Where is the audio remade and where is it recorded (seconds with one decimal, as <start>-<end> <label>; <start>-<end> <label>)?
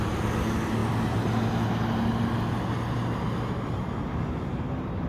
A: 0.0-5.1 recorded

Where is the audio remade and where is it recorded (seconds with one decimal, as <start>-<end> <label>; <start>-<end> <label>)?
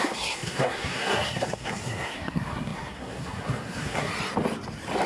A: 0.0-4.1 remade; 4.1-5.1 recorded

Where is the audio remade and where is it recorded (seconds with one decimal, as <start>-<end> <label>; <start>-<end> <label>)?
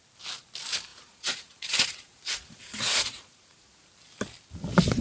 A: 0.0-0.9 recorded; 0.9-3.9 remade; 3.9-5.0 recorded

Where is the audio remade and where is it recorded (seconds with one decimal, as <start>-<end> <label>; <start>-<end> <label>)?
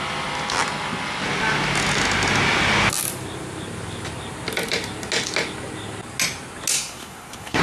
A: 0.0-6.7 recorded; 6.7-7.6 remade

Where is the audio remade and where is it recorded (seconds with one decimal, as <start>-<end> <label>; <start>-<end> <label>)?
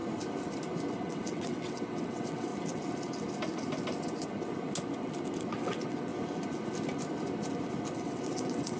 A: 0.0-0.9 recorded; 0.9-2.5 remade; 2.5-5.4 recorded; 5.4-6.1 remade; 6.1-8.0 recorded; 8.0-8.8 remade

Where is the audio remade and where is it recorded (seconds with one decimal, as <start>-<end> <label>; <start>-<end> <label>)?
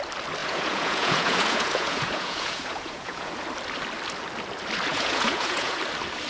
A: 0.0-0.4 recorded; 0.4-3.3 remade; 3.3-4.9 recorded; 4.9-5.8 remade; 5.8-6.3 recorded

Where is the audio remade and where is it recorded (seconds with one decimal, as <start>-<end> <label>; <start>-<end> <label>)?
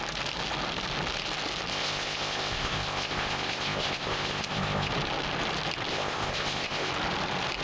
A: 0.0-1.7 recorded; 1.7-4.9 remade; 4.9-5.9 recorded; 5.9-6.9 remade; 6.9-7.6 recorded